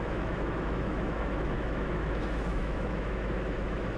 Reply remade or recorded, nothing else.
remade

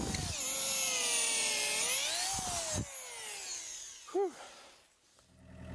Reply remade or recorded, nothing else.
recorded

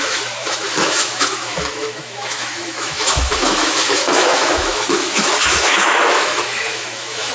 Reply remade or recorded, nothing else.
remade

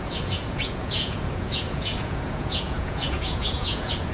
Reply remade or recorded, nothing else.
remade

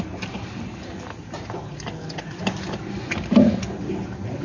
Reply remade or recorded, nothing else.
recorded